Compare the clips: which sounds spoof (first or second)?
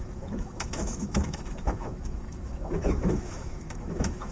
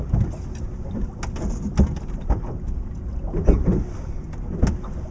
first